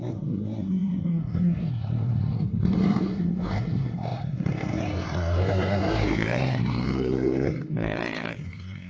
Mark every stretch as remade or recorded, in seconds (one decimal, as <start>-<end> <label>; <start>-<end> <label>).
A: 0.0-8.9 remade